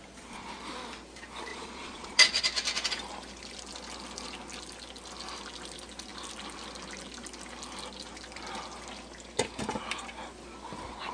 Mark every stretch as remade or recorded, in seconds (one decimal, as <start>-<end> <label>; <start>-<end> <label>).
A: 0.0-1.5 recorded; 1.5-2.4 remade; 2.4-11.1 recorded